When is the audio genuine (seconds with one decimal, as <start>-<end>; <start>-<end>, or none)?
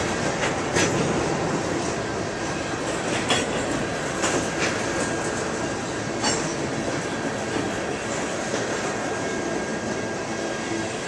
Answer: 0.0-11.1